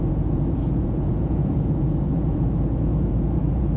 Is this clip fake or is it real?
fake